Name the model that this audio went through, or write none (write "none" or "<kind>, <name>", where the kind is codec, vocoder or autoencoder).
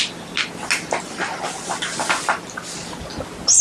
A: none